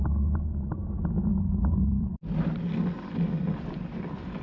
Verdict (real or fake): real